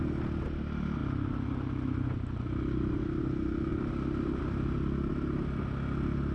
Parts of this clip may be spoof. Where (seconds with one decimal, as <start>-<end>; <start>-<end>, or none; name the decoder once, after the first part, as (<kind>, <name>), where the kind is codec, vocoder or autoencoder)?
none